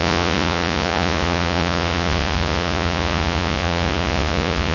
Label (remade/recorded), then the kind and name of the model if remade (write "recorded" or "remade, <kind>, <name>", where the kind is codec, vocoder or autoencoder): remade, vocoder, Vocos